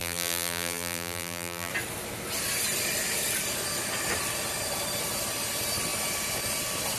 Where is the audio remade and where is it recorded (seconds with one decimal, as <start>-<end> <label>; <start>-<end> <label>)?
0.0-1.7 remade; 1.7-7.0 recorded